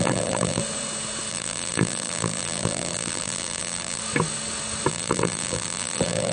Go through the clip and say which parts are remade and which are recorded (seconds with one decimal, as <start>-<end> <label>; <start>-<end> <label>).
0.0-0.6 remade; 0.6-1.3 recorded; 1.3-4.0 remade; 4.0-4.9 recorded; 4.9-6.3 remade